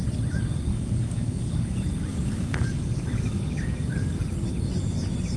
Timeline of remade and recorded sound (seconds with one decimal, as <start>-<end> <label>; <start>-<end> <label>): 0.0-0.7 recorded; 0.7-1.7 remade; 1.7-2.1 recorded; 2.1-4.2 remade; 4.2-5.4 recorded